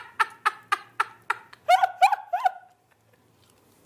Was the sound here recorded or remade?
recorded